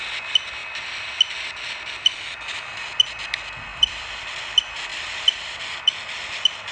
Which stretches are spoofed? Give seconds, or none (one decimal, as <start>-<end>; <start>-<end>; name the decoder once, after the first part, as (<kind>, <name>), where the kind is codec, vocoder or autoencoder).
3.7-4.4 (vocoder, BigVGAN v2); 4.9-5.9